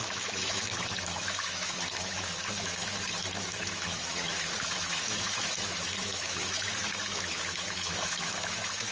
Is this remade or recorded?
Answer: remade